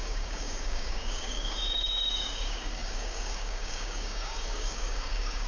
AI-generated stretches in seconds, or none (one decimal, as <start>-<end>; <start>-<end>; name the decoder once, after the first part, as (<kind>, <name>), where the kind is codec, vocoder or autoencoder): 0.0-5.5 (codec, DAC)